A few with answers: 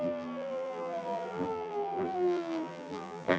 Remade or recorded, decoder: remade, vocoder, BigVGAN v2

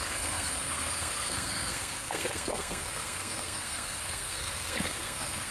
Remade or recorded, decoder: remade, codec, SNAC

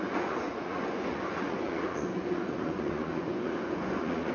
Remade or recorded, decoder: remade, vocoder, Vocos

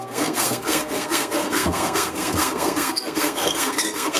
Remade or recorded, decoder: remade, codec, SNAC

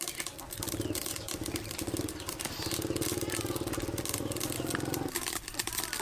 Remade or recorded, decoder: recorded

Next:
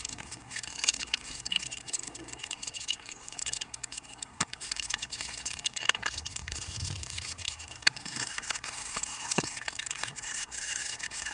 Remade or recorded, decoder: remade, codec, SNAC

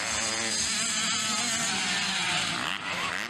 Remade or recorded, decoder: recorded